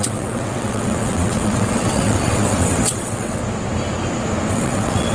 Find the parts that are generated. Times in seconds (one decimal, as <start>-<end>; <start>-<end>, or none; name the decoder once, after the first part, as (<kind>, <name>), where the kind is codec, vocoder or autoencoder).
0.0-3.4 (vocoder, WaveNeXt); 4.5-5.1